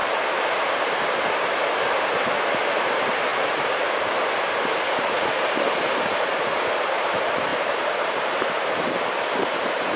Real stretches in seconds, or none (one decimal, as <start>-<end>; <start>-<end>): 0.0-0.5